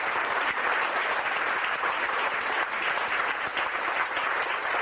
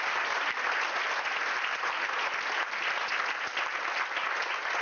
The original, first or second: second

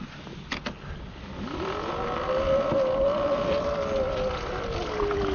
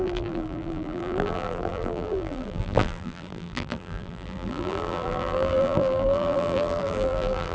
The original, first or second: first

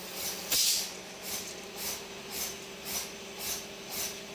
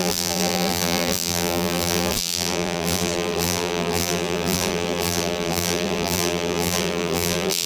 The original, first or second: first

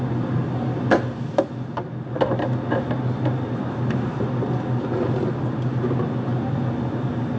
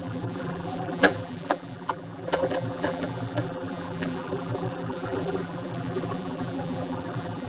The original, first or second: first